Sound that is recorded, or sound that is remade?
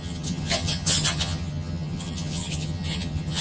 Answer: remade